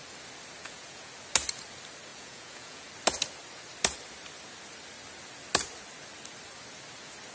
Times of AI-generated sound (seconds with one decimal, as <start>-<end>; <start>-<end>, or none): 0.6-1.1; 2.1-2.9